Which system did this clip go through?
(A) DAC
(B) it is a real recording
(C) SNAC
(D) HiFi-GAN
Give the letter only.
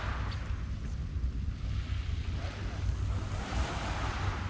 B